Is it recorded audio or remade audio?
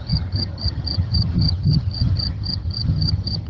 remade